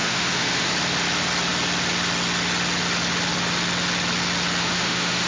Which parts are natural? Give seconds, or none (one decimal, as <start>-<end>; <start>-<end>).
0.7-4.6